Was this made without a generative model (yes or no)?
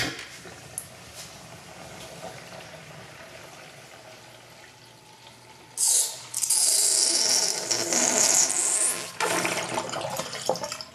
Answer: yes